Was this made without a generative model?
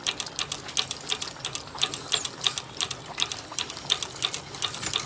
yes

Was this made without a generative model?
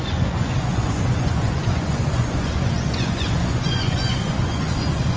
no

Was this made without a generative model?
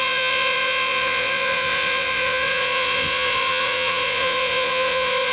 no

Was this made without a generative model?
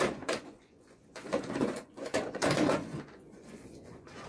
no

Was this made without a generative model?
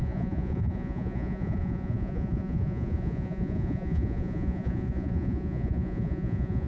no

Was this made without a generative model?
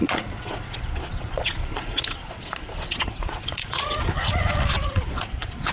no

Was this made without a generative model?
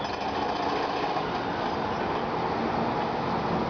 yes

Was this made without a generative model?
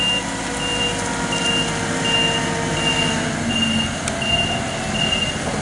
yes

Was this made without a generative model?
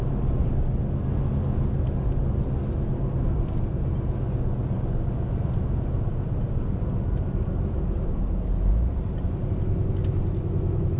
yes